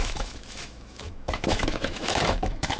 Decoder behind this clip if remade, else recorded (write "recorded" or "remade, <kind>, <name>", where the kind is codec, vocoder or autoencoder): remade, autoencoder, DAC-VAE